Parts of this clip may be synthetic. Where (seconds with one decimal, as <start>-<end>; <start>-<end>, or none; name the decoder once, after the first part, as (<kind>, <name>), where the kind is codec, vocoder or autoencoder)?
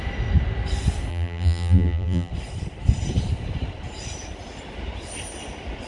1.1-2.3 (vocoder, BigVGAN v2)